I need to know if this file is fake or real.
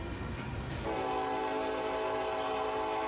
real